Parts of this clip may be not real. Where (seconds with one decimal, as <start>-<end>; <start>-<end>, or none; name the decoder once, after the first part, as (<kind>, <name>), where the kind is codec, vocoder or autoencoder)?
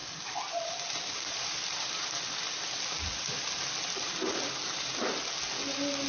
none